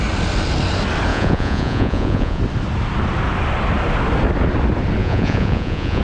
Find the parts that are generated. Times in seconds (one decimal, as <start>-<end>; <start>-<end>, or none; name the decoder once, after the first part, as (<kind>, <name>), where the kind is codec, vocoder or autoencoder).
1.1-2.4 (vocoder, Vocos); 5.0-6.0